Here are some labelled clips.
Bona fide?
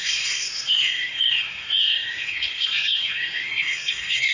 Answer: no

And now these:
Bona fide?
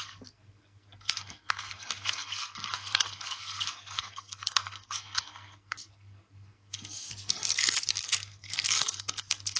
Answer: no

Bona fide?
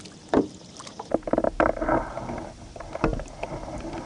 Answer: yes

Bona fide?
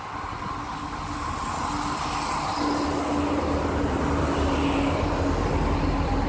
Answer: yes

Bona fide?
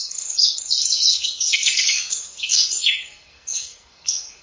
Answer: no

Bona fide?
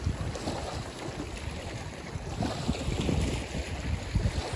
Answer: yes